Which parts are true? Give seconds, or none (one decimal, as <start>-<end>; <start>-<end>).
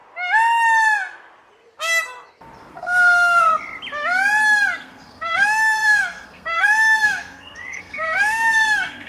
0.0-2.7; 3.5-4.8